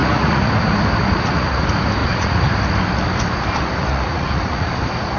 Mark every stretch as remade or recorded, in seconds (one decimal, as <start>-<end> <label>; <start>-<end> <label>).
0.0-0.5 remade; 0.5-1.0 recorded; 1.0-1.6 remade; 1.6-2.0 recorded; 2.0-2.5 remade; 2.5-3.8 recorded; 3.8-4.7 remade; 4.7-5.2 recorded